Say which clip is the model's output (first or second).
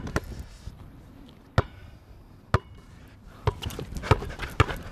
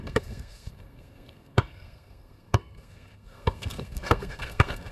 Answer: second